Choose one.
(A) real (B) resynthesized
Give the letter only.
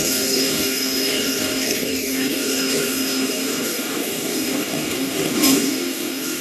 B